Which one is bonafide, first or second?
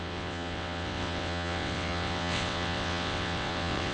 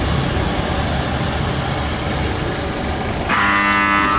second